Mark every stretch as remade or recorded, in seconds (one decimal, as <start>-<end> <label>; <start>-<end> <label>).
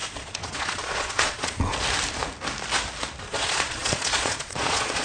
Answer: 0.0-1.7 remade; 1.7-3.3 recorded; 3.3-5.0 remade